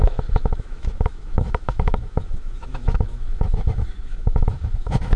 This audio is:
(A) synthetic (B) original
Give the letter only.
A